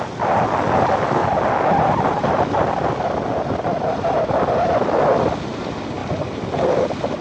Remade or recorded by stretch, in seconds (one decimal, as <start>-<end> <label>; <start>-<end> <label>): 0.0-7.2 recorded